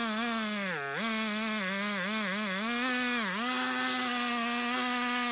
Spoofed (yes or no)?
no